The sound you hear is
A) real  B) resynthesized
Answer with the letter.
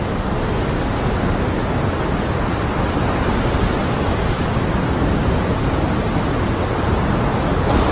A